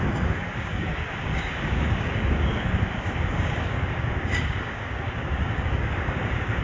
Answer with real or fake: fake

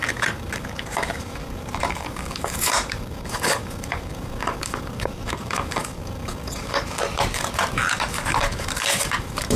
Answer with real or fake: fake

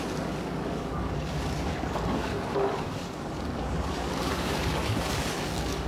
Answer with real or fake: fake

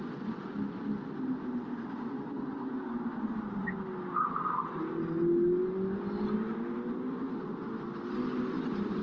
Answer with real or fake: real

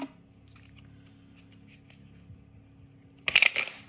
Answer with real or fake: real